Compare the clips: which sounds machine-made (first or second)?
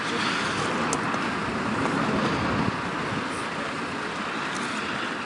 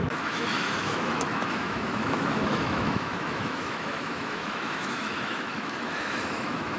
second